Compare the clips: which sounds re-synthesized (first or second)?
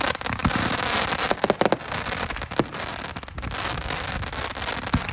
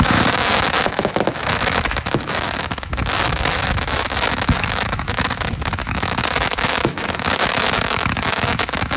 second